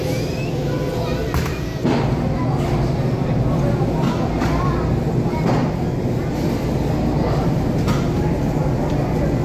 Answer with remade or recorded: recorded